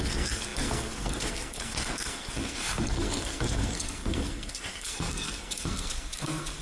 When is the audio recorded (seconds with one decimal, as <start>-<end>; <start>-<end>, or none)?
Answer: none